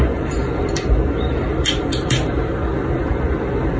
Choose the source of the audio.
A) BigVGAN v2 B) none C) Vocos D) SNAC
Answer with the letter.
B